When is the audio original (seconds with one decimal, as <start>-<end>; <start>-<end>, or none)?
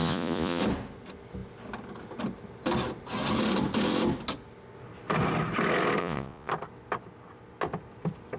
0.6-6.0; 6.5-8.4